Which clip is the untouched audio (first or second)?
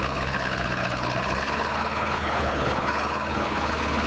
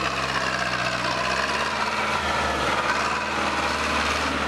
second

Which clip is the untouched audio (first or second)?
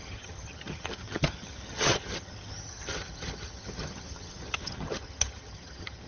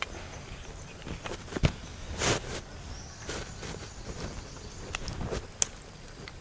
second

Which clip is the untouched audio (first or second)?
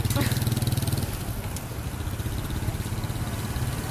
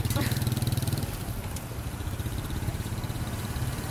first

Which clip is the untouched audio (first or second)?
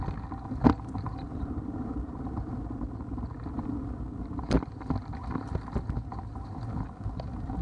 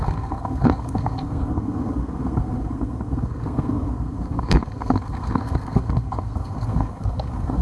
first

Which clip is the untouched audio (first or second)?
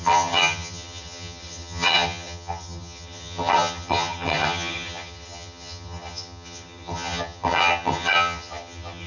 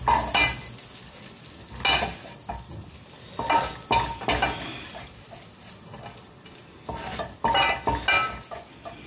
second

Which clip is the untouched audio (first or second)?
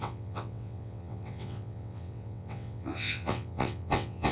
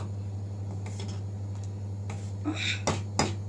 second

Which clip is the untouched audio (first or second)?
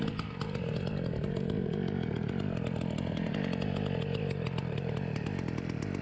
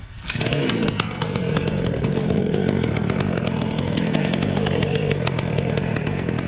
first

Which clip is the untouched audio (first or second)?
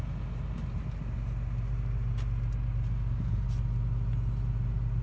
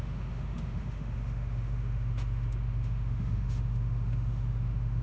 first